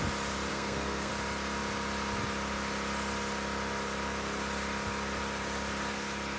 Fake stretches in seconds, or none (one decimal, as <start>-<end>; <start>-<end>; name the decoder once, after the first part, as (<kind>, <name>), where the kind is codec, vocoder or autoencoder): 0.5-1.1 (codec, SNAC)